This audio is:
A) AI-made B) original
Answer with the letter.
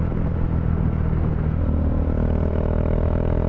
B